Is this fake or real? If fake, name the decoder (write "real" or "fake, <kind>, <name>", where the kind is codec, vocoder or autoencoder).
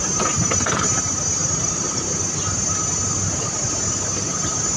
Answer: real